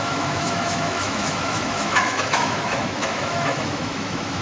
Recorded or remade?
remade